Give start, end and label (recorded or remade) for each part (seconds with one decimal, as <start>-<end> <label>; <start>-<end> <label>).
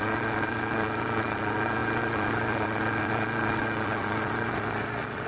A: 0.0-5.3 remade